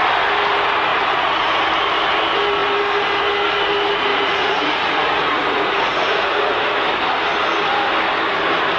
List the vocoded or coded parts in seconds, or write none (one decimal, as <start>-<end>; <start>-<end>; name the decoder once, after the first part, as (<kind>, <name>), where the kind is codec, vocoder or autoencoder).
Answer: 0.9-1.6 (vocoder, Vocos); 4.1-6.4